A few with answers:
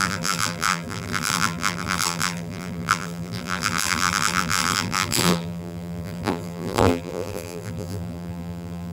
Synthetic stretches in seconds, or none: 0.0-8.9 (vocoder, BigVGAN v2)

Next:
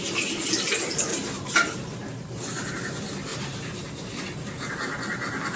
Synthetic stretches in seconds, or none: 1.1-2.7 (vocoder, BigVGAN v2); 3.3-4.7